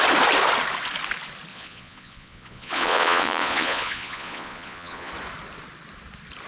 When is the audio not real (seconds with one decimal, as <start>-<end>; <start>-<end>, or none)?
1.5-5.1